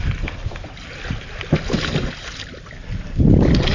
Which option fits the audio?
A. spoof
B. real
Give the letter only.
B